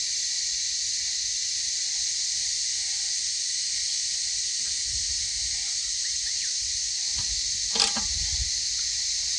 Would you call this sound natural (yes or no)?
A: yes